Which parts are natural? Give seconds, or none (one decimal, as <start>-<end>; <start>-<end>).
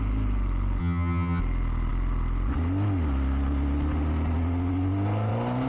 0.0-0.8; 1.4-5.7